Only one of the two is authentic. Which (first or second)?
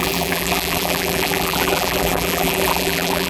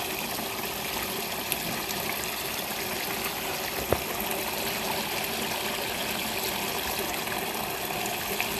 second